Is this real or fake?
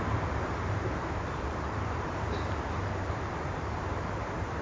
fake